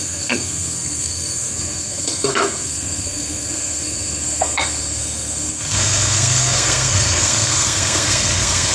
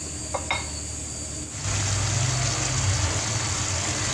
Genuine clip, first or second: second